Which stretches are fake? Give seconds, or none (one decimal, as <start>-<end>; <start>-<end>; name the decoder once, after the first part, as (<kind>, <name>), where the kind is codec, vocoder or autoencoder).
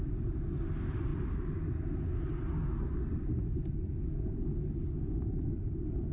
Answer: none